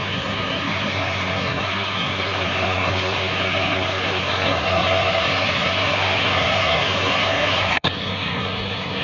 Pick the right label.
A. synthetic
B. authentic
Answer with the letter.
A